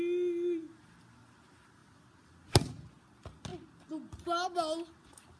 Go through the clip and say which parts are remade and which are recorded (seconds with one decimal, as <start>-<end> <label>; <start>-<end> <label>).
0.0-5.4 recorded